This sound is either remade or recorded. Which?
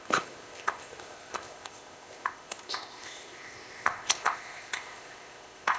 remade